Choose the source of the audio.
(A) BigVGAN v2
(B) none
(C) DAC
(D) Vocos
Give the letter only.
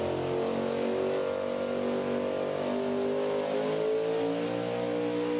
B